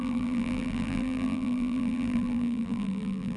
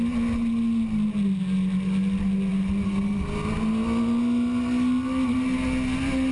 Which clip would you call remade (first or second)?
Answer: first